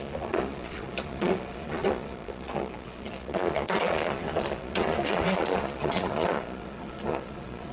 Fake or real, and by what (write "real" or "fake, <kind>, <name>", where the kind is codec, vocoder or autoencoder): fake, vocoder, Vocos